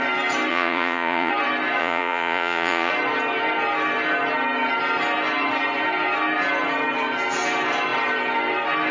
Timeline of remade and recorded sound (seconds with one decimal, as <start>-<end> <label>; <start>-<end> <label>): 0.0-0.5 recorded; 0.5-1.3 remade; 1.3-1.8 recorded; 1.8-2.9 remade; 2.9-8.9 recorded